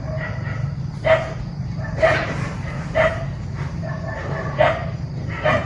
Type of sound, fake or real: fake